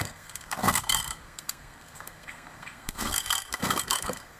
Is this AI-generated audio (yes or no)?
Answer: yes